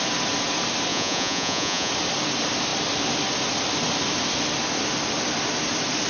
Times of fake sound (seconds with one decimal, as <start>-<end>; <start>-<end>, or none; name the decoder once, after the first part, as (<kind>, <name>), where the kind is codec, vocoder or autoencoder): 0.9-1.9 (vocoder, Vocos)